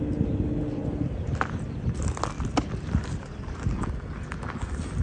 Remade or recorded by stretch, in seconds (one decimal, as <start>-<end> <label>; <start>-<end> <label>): 0.0-5.0 recorded